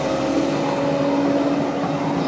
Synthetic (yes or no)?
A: no